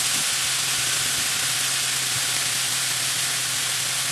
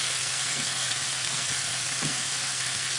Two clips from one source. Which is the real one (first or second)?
first